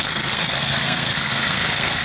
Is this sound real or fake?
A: fake